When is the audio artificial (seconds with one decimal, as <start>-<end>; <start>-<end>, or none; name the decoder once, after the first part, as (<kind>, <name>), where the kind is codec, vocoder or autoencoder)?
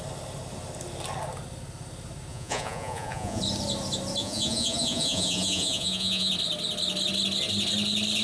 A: 2.3-3.4 (vocoder, Vocos); 4.2-6.3